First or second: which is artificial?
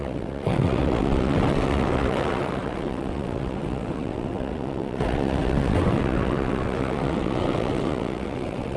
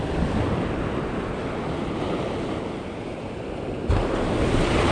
first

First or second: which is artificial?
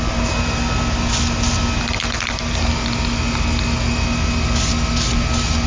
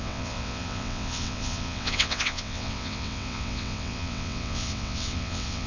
second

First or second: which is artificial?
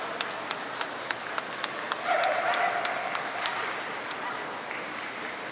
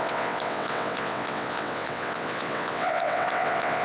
second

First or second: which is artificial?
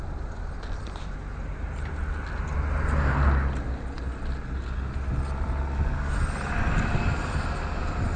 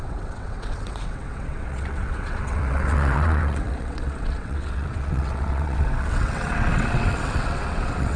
second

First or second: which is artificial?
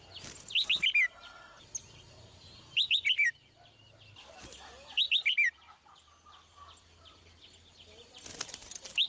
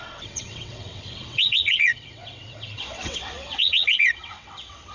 second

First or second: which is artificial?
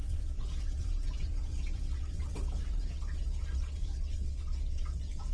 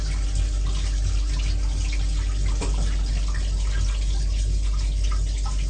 first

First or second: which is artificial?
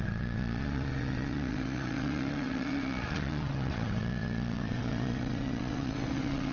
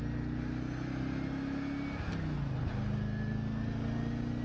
first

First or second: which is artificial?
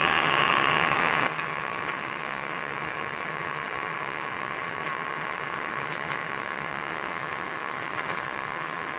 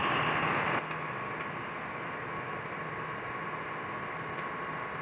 first